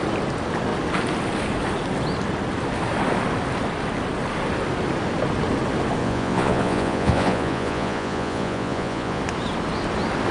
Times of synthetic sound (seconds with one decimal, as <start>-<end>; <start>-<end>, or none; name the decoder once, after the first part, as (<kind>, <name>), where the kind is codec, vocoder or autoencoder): 6.0-9.2 (vocoder, Vocos)